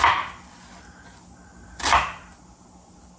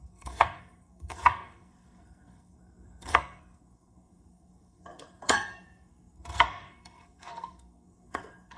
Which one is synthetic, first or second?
second